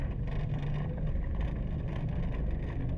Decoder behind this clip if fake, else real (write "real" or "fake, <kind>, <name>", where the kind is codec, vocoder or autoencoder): real